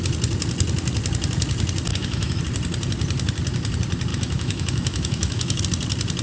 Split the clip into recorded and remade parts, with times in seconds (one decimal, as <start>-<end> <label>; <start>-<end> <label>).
0.0-1.9 recorded; 1.9-2.4 remade; 2.4-4.1 recorded; 4.1-5.6 remade; 5.6-6.2 recorded